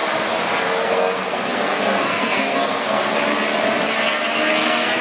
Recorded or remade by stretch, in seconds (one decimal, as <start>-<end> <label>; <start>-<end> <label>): 0.0-0.8 recorded; 0.8-3.1 remade; 3.1-4.5 recorded; 4.5-5.0 remade